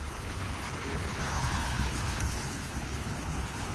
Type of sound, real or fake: fake